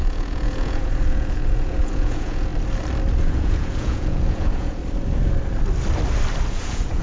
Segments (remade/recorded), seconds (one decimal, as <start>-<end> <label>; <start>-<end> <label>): 0.0-2.5 remade; 2.5-3.2 recorded; 3.2-4.8 remade; 4.8-6.5 recorded; 6.5-7.0 remade